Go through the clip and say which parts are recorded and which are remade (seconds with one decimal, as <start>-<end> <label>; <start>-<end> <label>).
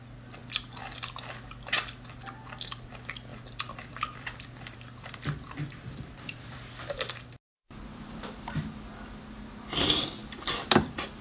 0.0-3.3 recorded; 3.3-7.0 remade; 7.0-7.6 recorded; 7.6-8.5 remade; 8.5-10.2 recorded; 10.2-11.2 remade